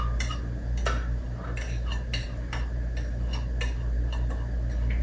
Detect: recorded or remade recorded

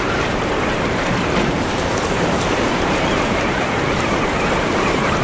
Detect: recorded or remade remade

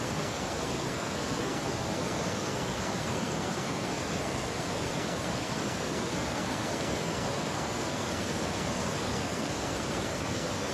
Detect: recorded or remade remade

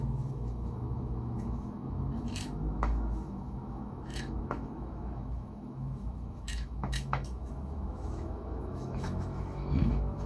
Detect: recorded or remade remade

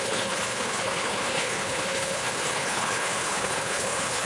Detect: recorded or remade remade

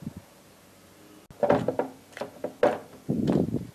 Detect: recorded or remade recorded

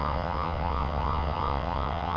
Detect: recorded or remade remade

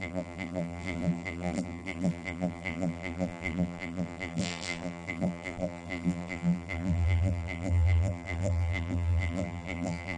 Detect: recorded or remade remade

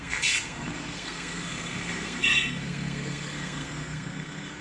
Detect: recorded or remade remade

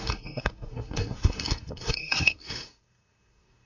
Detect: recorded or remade remade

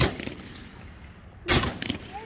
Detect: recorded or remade recorded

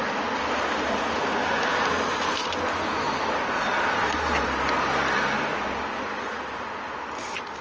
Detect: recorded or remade recorded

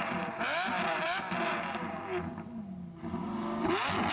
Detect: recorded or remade recorded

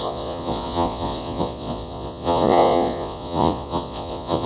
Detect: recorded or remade remade